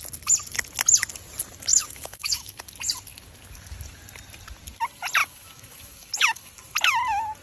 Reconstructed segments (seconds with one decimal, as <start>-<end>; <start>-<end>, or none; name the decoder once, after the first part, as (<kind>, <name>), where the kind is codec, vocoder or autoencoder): 1.7-2.6 (autoencoder, DAC-VAE); 5.2-6.5